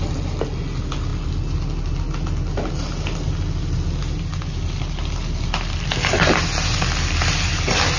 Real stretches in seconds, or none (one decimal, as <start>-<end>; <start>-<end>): 0.0-8.0